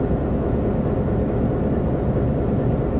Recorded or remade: recorded